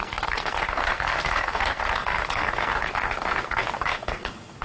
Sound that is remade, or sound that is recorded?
remade